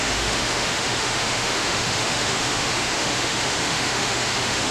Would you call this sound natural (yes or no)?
no